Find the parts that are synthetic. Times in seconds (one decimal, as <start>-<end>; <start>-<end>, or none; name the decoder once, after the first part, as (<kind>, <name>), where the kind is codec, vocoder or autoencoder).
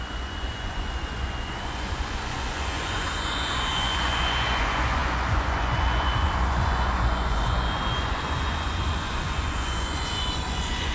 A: 0.0-10.9 (vocoder, Vocos)